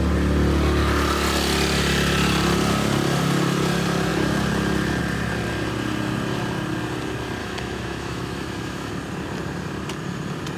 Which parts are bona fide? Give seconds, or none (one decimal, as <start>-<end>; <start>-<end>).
0.0-7.4; 8.9-10.6